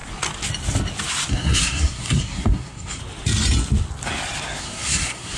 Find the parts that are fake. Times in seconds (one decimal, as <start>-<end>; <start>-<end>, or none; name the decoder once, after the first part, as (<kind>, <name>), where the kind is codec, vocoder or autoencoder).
1.3-3.0 (codec, SNAC); 4.6-5.4